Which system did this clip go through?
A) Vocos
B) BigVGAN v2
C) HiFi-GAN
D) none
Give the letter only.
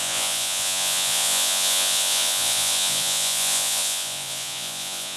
A